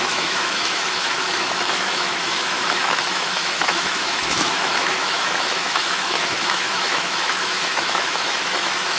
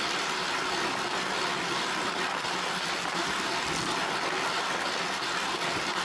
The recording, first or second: second